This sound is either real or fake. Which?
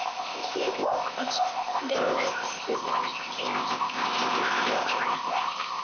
fake